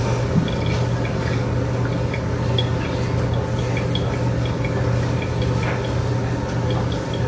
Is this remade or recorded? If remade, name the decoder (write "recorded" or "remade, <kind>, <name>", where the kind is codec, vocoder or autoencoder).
recorded